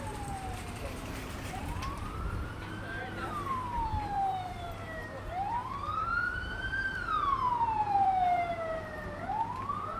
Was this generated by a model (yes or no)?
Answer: yes